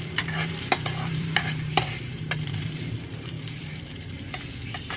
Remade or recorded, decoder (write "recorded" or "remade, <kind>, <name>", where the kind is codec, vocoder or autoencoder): remade, vocoder, BigVGAN v2